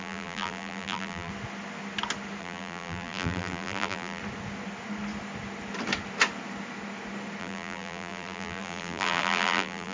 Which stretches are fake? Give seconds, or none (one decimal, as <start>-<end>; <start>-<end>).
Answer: 0.0-1.3; 2.4-4.2; 7.4-9.9